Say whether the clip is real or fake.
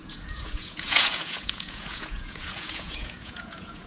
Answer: fake